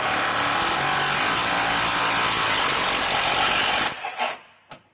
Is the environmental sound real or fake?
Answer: real